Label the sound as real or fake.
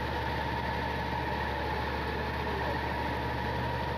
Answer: real